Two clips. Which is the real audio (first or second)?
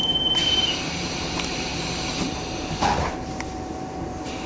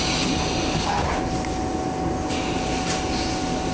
second